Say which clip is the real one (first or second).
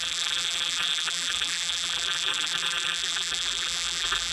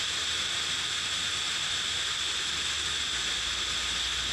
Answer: second